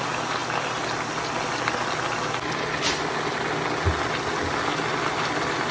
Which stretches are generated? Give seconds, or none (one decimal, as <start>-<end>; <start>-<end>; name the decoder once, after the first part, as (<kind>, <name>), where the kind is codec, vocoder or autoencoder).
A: 4.7-5.2 (vocoder, BigVGAN v2)